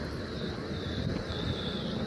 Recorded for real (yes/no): no